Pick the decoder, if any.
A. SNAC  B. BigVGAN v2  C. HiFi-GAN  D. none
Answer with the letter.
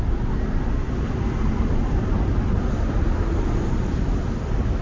D